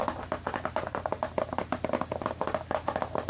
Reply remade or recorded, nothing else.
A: recorded